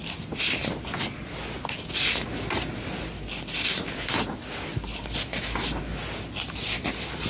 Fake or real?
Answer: real